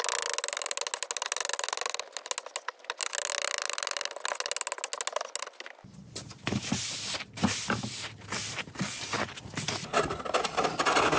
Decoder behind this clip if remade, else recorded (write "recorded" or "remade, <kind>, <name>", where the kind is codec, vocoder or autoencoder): recorded